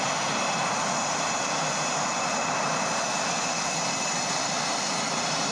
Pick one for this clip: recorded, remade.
recorded